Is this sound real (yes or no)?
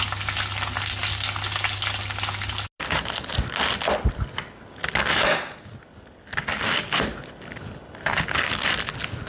yes